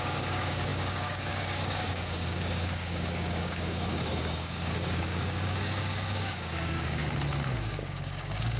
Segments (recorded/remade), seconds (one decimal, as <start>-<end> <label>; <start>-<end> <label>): 0.0-7.0 remade; 7.0-7.6 recorded; 7.6-8.6 remade